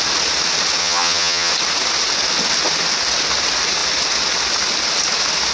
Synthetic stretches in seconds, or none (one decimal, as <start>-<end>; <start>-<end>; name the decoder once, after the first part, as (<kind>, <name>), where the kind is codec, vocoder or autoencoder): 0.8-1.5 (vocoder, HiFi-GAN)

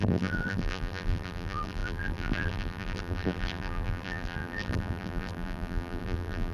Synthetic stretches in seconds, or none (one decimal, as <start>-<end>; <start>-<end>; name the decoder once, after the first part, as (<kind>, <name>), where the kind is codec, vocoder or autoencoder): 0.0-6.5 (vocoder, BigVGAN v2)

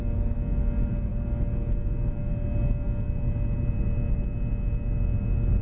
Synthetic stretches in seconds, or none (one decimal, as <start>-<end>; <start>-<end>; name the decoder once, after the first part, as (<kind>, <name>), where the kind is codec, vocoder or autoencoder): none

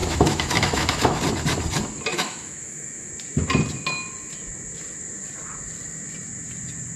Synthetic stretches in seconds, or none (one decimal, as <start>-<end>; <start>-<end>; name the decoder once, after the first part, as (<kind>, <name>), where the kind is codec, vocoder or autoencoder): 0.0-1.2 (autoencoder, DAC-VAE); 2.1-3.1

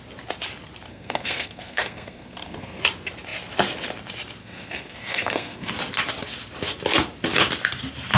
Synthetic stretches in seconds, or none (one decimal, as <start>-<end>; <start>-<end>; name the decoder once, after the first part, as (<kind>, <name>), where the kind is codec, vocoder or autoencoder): 0.9-2.8 (codec, SNAC); 4.4-5.7

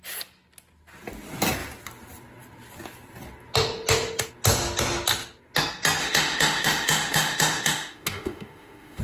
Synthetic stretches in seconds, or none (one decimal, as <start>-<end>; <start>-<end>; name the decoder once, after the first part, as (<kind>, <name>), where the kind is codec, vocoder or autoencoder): 6.0-9.0 (autoencoder, DAC-VAE)